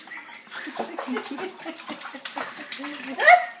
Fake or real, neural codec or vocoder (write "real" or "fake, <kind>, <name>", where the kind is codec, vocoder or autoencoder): real